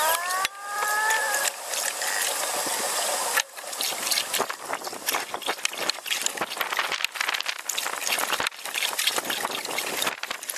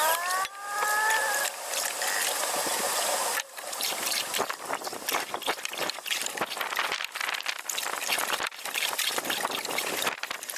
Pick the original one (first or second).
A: first